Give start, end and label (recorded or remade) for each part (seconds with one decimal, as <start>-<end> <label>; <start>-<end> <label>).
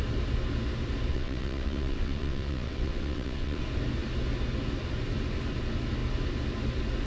0.0-1.1 recorded; 1.1-3.6 remade; 3.6-7.1 recorded